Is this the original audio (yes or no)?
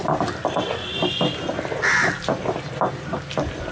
yes